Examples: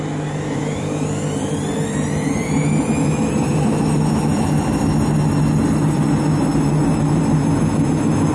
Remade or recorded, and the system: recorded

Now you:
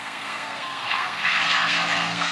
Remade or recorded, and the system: remade, codec, SNAC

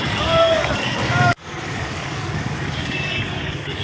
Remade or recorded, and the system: remade, codec, DAC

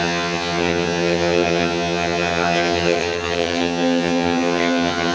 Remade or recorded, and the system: remade, vocoder, HiFi-GAN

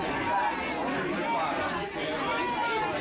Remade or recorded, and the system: recorded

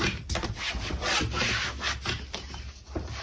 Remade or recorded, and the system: recorded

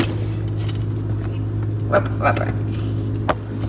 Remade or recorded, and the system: recorded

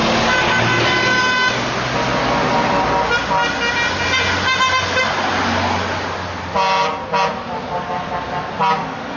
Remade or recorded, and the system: recorded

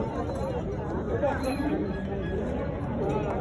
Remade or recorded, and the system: recorded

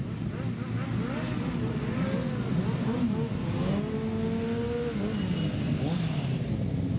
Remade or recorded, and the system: recorded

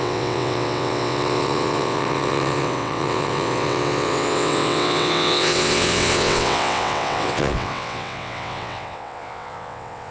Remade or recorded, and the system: remade, vocoder, WaveNeXt